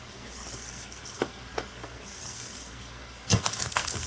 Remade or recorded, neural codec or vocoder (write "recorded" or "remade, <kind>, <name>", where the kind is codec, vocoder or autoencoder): remade, codec, SNAC